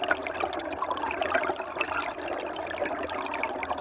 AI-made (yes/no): no